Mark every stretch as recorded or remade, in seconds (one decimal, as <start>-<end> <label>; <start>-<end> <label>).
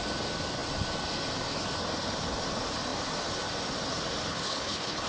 0.0-4.3 recorded; 4.3-5.1 remade